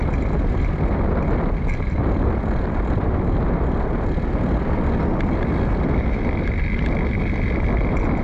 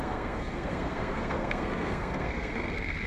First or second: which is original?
first